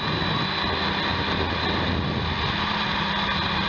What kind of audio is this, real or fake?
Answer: real